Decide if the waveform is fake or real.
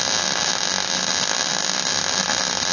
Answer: real